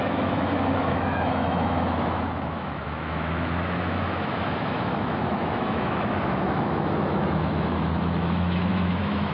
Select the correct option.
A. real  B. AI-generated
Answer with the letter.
B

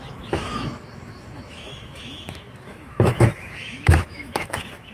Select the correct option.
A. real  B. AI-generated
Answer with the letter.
B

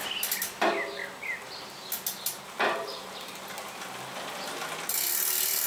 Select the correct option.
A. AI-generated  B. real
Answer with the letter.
B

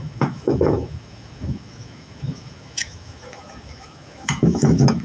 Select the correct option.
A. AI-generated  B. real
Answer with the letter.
A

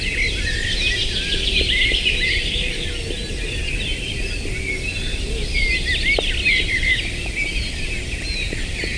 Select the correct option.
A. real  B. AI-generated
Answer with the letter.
A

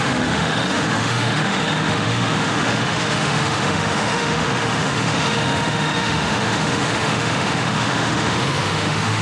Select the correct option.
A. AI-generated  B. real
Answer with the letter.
A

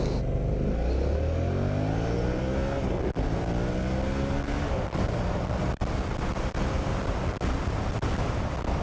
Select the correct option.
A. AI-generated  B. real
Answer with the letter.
B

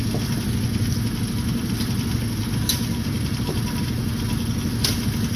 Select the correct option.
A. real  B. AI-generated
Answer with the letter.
A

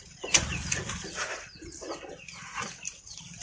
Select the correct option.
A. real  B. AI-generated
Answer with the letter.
A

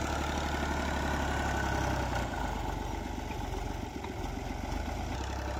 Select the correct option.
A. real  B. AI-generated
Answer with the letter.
A